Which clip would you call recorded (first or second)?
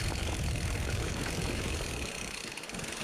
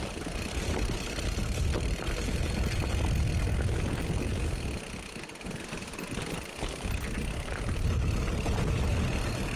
second